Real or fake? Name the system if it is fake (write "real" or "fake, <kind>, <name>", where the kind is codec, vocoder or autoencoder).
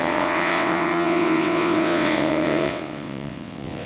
fake, vocoder, WaveNeXt